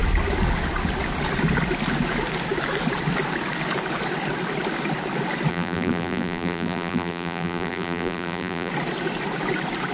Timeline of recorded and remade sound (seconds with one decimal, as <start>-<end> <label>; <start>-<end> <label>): 0.0-5.5 recorded; 5.5-8.7 remade; 8.7-9.9 recorded